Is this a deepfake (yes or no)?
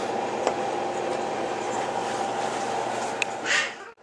no